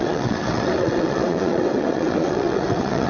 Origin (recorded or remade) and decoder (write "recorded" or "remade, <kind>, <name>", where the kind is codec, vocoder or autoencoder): remade, vocoder, WaveNeXt